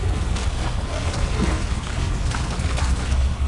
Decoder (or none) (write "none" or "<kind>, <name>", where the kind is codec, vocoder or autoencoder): codec, SNAC